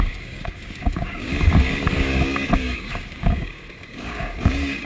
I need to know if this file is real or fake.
fake